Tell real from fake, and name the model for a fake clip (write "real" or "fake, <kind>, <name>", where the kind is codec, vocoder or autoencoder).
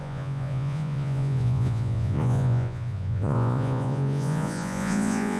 fake, vocoder, Vocos